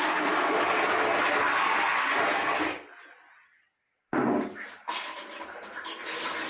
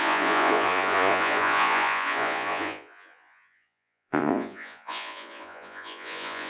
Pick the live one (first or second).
first